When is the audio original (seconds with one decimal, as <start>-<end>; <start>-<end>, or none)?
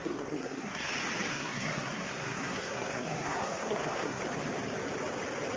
0.9-1.3; 4.2-5.6